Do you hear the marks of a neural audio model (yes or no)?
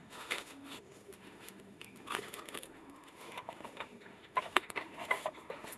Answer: yes